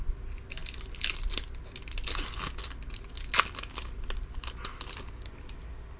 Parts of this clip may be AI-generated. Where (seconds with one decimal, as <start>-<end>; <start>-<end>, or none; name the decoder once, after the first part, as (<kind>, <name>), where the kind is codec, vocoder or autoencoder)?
none